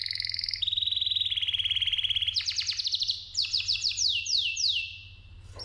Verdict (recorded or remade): recorded